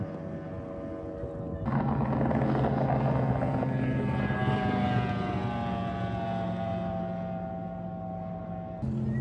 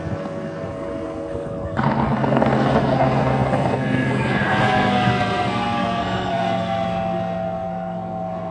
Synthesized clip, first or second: second